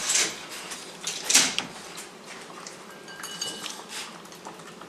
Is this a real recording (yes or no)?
no